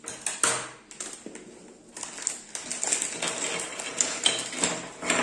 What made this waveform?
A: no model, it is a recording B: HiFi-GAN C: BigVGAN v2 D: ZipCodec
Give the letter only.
A